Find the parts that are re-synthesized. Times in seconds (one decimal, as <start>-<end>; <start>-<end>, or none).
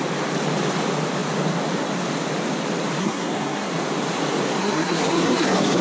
3.0-3.7; 4.6-5.8